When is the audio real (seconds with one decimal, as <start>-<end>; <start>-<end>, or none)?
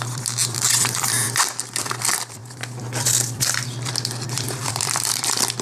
none